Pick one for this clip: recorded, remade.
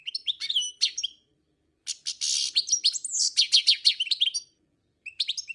recorded